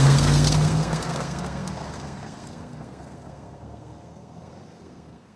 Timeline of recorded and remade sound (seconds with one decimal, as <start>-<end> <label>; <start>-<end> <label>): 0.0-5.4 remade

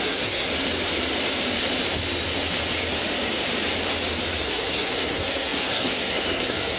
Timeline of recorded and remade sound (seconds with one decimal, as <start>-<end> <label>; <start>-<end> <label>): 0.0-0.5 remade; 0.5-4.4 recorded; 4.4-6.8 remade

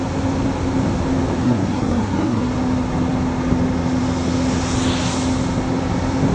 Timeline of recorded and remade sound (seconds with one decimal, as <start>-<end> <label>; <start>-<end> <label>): 0.0-1.4 recorded; 1.4-2.5 remade; 2.5-6.3 recorded

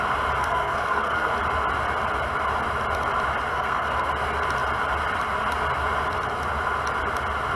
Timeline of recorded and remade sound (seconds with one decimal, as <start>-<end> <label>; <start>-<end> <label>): 0.0-0.4 recorded; 0.4-1.3 remade; 1.3-3.5 recorded; 3.5-4.1 remade; 4.1-7.6 recorded

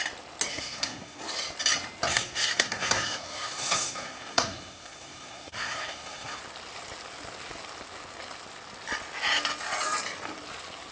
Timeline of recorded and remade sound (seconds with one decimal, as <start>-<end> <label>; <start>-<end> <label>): 0.0-0.5 recorded; 0.5-1.2 remade; 1.2-2.1 recorded; 2.1-6.4 remade; 6.4-10.9 recorded

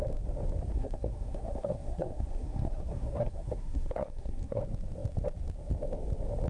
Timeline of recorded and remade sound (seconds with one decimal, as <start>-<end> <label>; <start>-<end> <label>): 0.0-0.7 recorded; 0.7-4.6 remade; 4.6-6.5 recorded